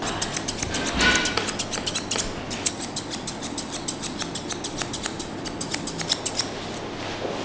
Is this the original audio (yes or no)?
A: yes